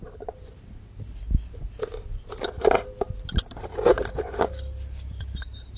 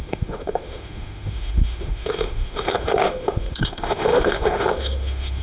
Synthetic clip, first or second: second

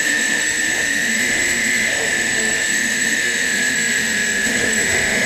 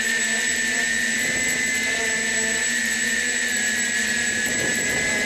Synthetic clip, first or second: first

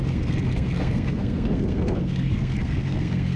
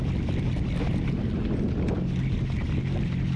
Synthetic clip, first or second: first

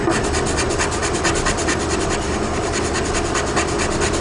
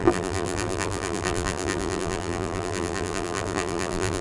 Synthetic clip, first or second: second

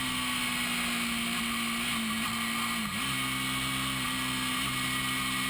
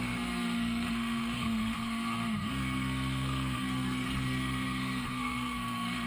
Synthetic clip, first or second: second